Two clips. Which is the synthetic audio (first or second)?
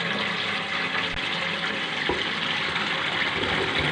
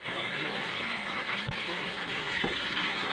second